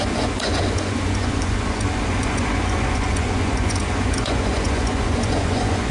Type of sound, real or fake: fake